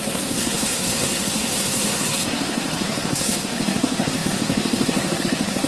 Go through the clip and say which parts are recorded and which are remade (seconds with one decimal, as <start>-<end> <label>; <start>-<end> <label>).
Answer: 0.0-5.7 remade